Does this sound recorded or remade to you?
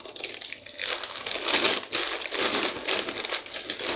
recorded